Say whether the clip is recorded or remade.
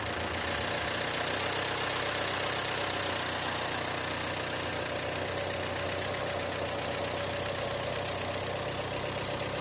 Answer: recorded